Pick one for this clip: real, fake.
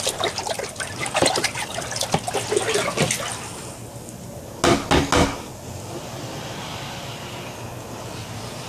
real